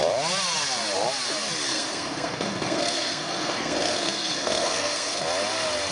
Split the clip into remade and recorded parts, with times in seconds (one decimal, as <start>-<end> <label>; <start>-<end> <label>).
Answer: 0.0-1.7 recorded; 1.7-5.2 remade; 5.2-5.9 recorded